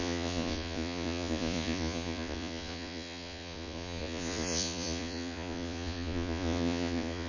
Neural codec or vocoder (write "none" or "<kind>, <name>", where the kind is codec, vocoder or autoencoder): vocoder, Vocos